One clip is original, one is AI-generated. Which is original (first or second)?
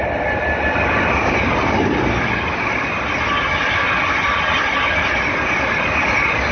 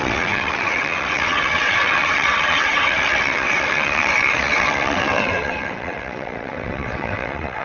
first